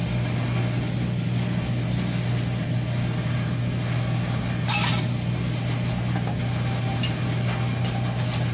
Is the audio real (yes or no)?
yes